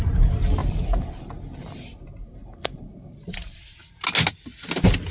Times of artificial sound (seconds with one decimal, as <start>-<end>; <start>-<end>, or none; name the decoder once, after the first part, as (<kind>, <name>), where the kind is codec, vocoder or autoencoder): 0.6-1.1 (vocoder, BigVGAN v2); 2.4-3.4